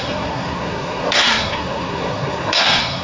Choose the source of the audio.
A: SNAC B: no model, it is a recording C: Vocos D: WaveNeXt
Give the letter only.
A